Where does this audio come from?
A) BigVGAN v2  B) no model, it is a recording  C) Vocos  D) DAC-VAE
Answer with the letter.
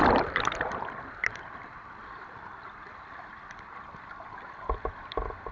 A